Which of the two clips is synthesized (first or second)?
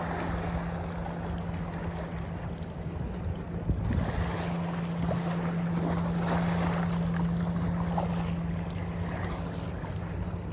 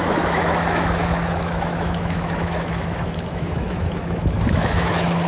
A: second